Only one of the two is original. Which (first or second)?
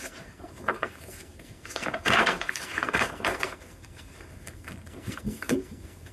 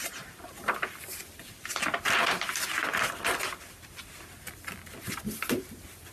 second